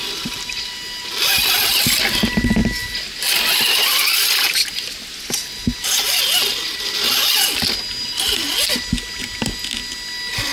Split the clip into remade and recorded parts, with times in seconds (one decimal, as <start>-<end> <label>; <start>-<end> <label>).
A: 0.0-10.5 recorded